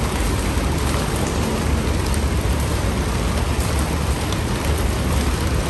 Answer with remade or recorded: recorded